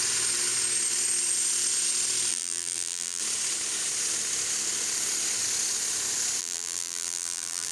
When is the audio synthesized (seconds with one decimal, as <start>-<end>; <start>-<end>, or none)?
2.3-3.2; 6.4-7.7